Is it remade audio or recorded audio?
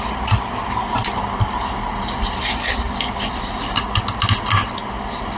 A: recorded